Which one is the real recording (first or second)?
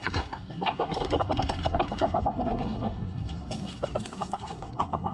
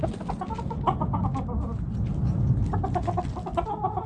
second